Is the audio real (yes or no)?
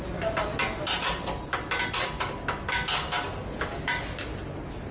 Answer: yes